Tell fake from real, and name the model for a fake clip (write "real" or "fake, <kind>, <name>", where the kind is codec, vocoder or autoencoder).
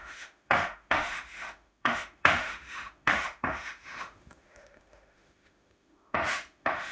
fake, autoencoder, DAC-VAE